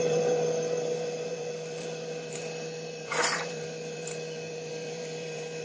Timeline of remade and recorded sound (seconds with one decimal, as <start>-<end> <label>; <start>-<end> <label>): 0.0-5.6 remade